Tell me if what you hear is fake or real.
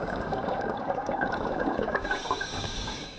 fake